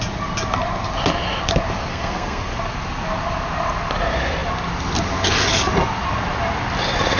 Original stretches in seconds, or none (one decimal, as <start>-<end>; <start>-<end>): 0.0-1.9; 2.6-7.2